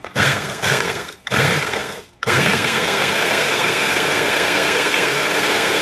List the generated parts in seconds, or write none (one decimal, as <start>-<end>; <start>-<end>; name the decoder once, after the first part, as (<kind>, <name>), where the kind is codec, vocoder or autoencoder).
0.0-5.8 (codec, SNAC)